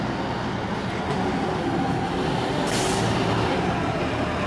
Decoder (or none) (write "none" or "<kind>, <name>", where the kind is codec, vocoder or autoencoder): none